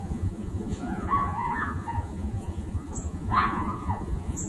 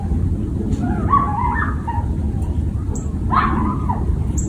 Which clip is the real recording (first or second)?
second